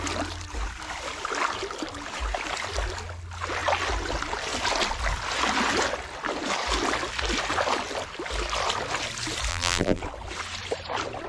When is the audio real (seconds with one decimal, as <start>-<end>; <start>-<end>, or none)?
0.0-9.5; 10.0-11.3